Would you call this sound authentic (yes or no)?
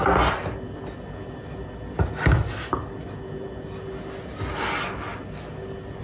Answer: yes